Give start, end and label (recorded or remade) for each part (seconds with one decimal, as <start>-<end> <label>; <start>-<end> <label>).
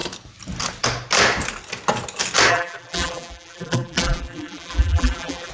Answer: 0.0-2.5 recorded; 2.5-5.5 remade